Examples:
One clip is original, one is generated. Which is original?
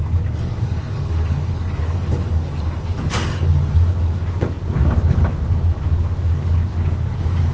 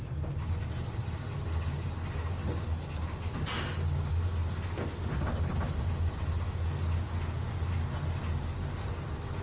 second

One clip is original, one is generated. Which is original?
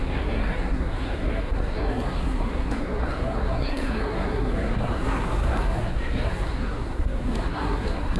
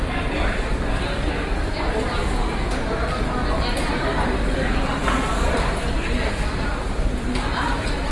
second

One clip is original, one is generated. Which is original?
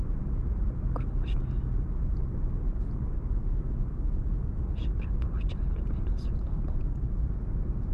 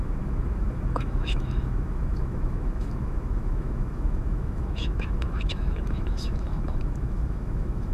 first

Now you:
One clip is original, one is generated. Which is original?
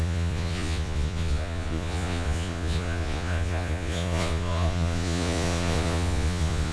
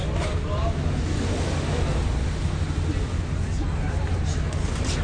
second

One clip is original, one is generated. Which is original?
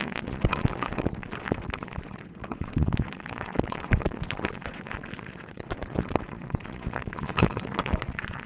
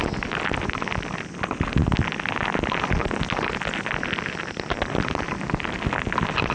second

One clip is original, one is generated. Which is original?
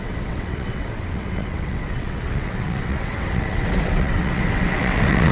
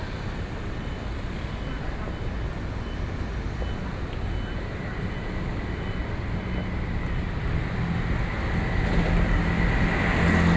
second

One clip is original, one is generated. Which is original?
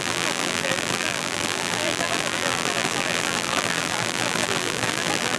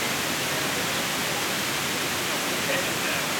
second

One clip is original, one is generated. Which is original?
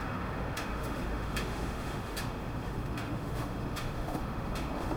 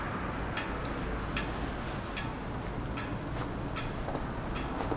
second